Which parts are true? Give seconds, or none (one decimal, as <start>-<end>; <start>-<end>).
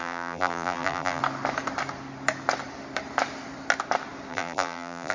1.2-4.3